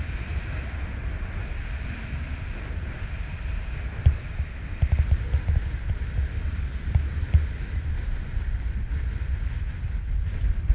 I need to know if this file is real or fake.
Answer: real